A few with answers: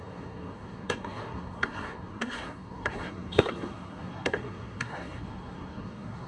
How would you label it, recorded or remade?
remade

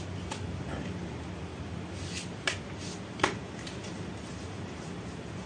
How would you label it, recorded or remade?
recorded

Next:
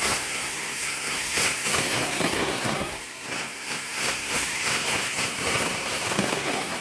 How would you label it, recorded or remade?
remade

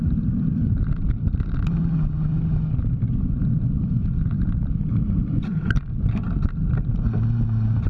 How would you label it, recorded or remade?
recorded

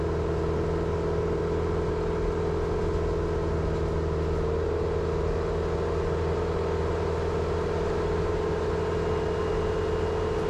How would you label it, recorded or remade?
recorded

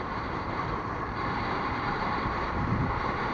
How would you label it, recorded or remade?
remade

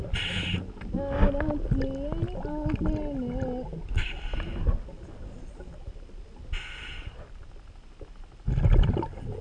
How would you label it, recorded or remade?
recorded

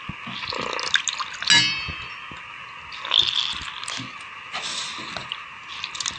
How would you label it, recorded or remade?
recorded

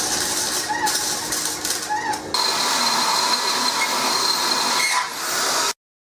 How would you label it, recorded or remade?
recorded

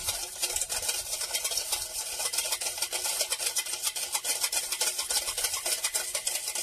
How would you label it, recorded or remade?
recorded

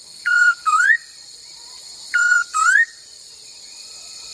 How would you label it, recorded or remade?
remade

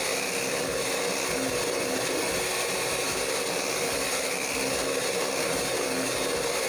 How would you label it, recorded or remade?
recorded